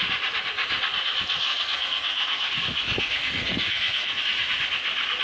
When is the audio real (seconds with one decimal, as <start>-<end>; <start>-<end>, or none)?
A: 0.0-1.5; 4.2-5.2